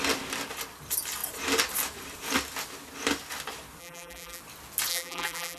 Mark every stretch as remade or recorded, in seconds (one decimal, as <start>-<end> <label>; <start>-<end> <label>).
0.0-3.8 recorded; 3.8-4.4 remade; 4.4-4.9 recorded; 4.9-5.6 remade